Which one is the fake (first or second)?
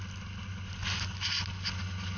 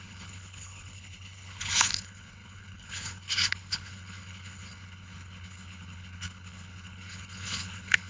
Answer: second